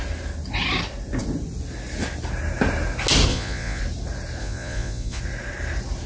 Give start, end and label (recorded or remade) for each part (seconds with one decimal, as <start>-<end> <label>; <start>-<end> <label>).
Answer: 0.0-3.3 recorded; 3.3-3.8 remade; 3.8-4.4 recorded; 4.4-5.2 remade; 5.2-6.1 recorded